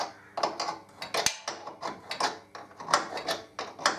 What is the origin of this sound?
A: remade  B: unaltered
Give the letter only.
B